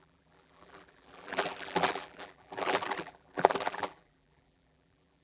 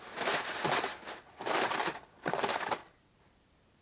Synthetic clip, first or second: first